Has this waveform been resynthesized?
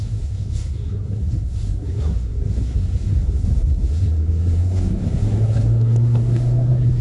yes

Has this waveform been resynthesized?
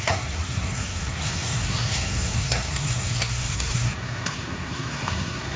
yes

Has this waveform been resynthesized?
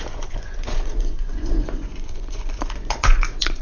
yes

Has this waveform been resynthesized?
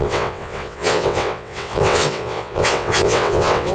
yes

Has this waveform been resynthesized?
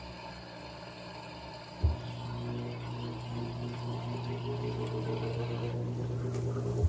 no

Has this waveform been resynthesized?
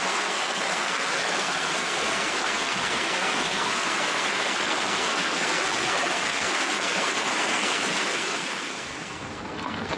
yes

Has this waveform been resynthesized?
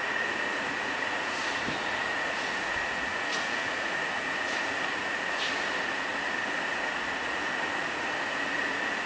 yes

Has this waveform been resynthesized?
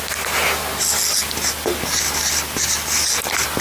no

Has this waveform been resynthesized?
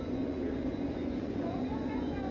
yes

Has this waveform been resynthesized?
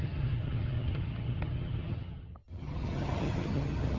yes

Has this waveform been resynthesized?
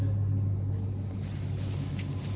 no